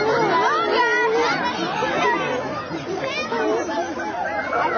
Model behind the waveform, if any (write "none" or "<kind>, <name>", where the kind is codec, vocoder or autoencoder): none